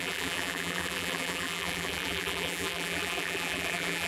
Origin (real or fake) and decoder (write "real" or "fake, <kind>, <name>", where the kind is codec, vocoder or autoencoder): fake, vocoder, BigVGAN v2